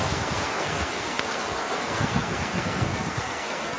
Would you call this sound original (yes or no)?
no